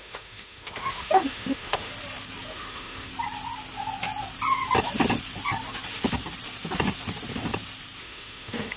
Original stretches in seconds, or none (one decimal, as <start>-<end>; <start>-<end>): 1.9-2.5; 3.1-8.0